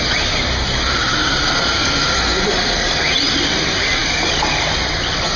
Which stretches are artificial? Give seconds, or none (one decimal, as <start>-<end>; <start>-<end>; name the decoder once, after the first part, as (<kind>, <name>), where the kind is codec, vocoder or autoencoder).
none